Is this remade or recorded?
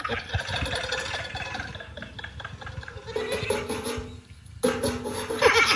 recorded